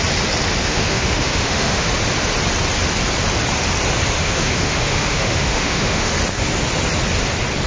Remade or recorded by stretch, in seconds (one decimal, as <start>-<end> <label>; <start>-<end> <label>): 0.0-0.6 recorded; 0.6-1.9 remade; 1.9-4.2 recorded; 4.2-6.1 remade; 6.1-7.7 recorded